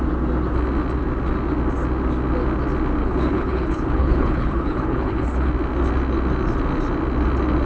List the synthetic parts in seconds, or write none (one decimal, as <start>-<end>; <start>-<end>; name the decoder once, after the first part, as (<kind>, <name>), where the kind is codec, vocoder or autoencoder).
3.0-5.5 (codec, HILCodec)